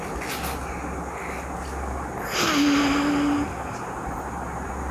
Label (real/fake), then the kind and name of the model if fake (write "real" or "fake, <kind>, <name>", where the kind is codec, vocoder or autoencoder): real